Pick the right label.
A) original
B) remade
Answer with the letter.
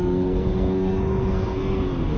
B